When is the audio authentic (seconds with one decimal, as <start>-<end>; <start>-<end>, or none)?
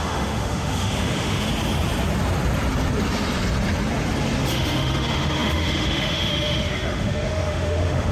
1.5-4.5